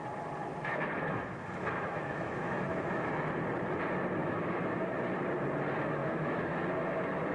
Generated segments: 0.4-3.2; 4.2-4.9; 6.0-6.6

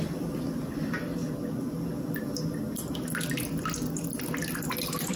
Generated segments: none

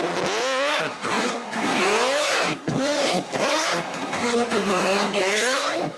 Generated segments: 0.7-1.8; 2.2-6.0